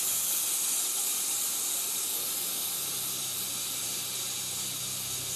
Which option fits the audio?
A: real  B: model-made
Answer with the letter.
A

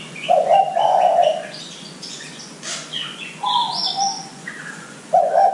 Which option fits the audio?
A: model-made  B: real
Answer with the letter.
A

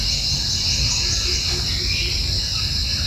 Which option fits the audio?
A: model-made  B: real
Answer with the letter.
B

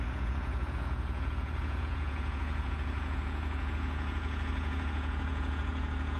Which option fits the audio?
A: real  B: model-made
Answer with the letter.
B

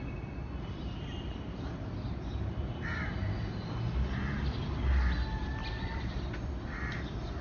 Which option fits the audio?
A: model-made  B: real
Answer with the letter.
B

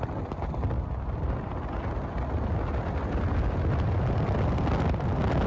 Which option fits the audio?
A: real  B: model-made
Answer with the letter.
A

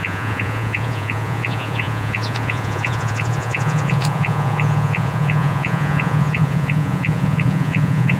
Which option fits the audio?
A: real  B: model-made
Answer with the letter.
B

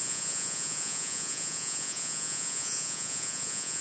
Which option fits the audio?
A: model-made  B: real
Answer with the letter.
A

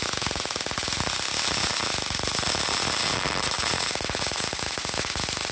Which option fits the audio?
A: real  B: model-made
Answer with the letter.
A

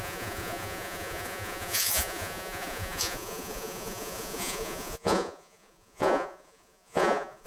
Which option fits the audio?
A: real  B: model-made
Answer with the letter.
B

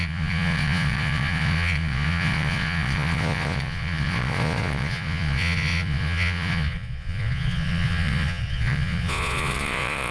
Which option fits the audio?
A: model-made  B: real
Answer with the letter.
A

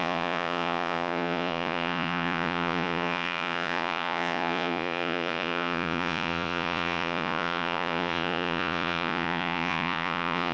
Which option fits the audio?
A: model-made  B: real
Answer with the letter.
A